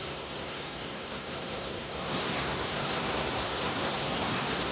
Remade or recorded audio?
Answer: remade